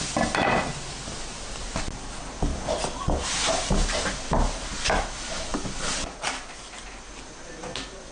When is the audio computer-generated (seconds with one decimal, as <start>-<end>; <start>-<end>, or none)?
none